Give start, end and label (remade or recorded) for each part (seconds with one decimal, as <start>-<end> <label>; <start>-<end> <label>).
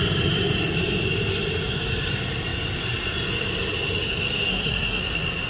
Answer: 0.0-4.5 recorded; 4.5-5.0 remade; 5.0-5.5 recorded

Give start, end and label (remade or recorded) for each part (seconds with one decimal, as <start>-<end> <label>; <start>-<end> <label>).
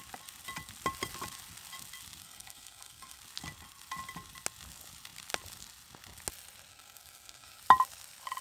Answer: 0.0-2.2 recorded; 2.2-3.2 remade; 3.2-6.7 recorded; 6.7-7.6 remade; 7.6-8.4 recorded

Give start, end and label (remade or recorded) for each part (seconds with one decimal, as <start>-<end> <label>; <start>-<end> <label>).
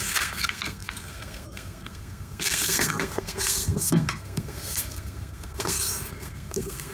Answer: 0.0-6.9 remade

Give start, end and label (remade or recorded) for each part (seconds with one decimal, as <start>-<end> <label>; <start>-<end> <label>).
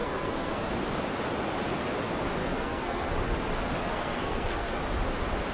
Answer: 0.0-0.7 remade; 0.7-2.4 recorded; 2.4-3.1 remade; 3.1-3.8 recorded; 3.8-4.8 remade; 4.8-5.5 recorded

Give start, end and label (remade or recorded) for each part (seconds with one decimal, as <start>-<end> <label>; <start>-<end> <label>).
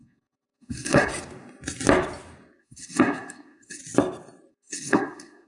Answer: 0.0-1.1 remade; 1.1-2.6 recorded; 2.6-3.8 remade; 3.8-4.5 recorded; 4.5-5.5 remade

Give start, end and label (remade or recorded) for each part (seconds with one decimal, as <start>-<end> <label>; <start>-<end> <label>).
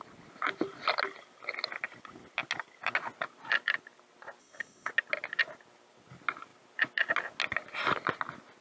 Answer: 0.0-4.4 recorded; 4.4-4.9 remade; 4.9-8.6 recorded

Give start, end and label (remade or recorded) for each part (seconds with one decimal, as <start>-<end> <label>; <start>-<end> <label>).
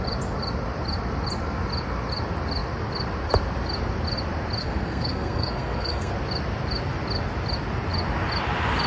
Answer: 0.0-4.6 recorded; 4.6-6.1 remade; 6.1-8.9 recorded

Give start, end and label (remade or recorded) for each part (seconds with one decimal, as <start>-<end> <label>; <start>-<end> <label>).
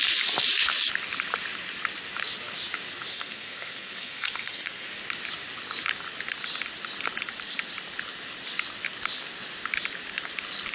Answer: 0.0-3.1 recorded; 3.1-4.9 remade; 4.9-10.7 recorded